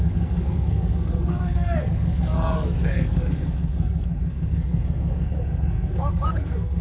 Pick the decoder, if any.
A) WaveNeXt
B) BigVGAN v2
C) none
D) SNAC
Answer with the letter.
D